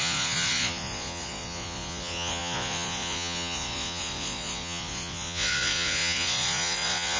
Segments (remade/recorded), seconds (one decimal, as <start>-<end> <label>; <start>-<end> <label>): 0.0-7.2 remade